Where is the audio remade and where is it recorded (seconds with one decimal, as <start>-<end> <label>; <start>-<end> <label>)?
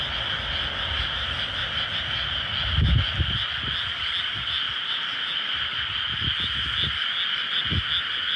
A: 0.0-8.4 recorded